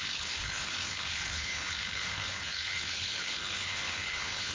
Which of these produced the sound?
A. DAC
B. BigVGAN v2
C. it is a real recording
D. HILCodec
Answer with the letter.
D